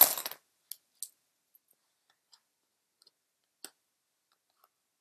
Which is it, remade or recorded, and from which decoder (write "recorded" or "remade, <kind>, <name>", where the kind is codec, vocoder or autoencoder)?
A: recorded